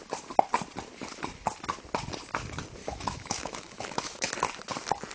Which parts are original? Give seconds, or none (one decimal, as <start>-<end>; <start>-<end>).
0.0-2.8; 4.3-5.1